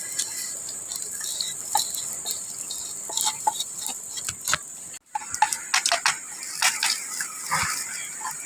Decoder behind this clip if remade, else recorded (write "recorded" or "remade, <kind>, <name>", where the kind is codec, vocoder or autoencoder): recorded